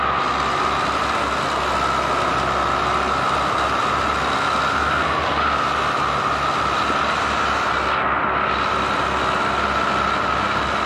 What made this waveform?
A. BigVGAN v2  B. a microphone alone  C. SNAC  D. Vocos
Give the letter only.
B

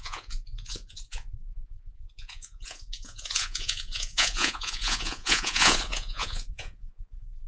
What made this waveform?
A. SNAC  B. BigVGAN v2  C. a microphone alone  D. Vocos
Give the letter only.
D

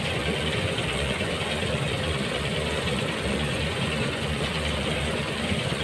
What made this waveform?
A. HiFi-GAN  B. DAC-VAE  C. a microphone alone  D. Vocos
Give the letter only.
D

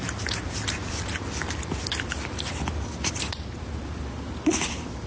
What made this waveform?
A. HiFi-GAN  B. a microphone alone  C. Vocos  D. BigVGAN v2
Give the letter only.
B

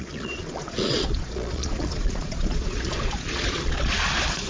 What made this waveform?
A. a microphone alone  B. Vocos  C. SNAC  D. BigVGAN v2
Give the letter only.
B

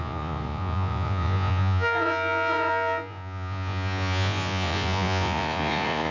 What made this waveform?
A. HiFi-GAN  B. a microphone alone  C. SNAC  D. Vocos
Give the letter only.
D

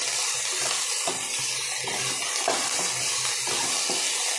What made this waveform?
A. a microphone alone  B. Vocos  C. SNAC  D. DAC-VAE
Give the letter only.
A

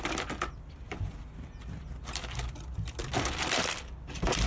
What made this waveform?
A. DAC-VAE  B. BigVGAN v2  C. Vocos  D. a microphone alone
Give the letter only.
D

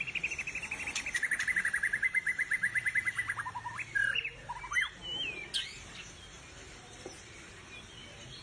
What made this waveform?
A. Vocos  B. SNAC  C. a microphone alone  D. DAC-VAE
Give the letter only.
C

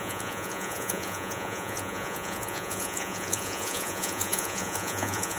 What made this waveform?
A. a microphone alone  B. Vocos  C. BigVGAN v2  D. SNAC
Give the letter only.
B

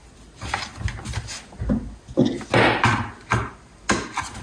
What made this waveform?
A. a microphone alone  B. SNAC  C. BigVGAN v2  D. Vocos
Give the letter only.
A